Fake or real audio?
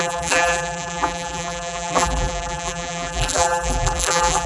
fake